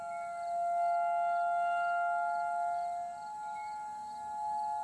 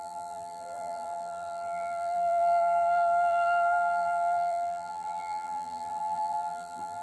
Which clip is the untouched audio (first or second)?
first